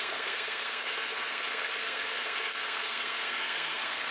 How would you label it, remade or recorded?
remade